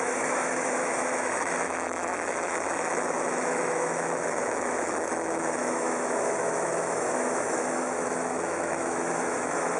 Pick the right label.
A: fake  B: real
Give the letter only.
A